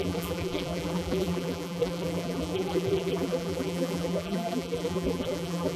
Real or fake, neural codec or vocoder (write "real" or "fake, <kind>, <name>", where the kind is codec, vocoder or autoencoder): fake, vocoder, BigVGAN v2